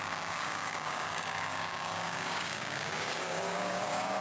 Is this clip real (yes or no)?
no